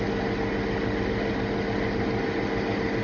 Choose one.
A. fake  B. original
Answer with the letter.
B